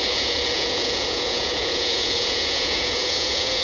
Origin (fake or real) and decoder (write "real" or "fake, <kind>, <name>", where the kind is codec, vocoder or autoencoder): fake, vocoder, Vocos